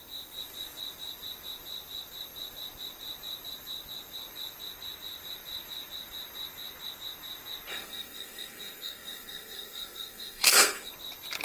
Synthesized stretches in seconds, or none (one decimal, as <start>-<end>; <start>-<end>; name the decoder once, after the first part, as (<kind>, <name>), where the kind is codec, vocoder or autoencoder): 7.7-10.9 (codec, SNAC)